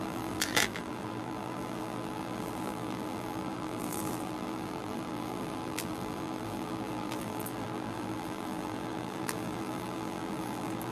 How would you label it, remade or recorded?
remade